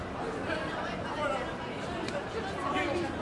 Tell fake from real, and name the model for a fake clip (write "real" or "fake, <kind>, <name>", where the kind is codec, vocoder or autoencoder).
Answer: real